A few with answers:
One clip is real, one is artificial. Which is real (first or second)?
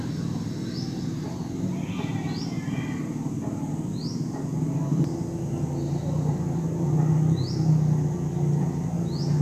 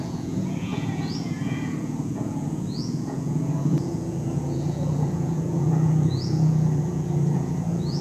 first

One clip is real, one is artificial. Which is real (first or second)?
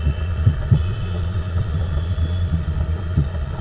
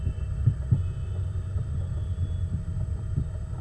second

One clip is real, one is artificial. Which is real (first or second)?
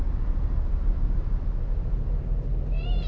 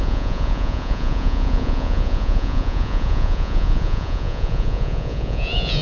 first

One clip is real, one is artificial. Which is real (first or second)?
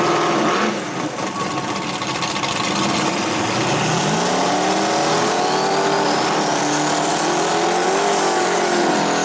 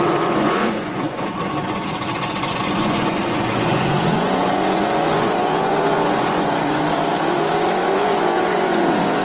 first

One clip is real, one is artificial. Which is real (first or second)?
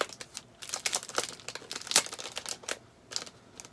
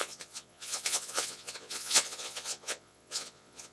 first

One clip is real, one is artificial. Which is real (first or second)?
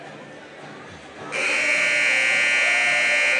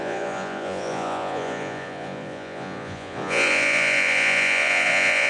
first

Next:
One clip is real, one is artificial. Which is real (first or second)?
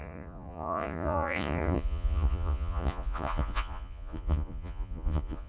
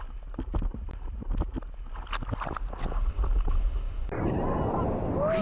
second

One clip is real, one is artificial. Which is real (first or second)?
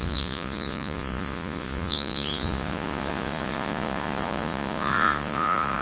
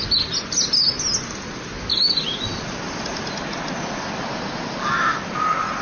second